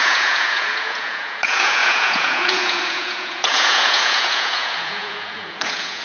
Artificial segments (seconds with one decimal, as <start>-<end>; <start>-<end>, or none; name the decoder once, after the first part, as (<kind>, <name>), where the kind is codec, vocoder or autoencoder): 0.0-6.0 (vocoder, Vocos)